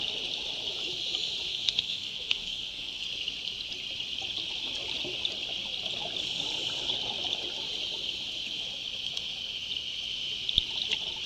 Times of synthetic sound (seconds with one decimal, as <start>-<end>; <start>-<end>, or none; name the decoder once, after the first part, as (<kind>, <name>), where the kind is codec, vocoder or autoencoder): 1.5-3.0 (codec, SNAC)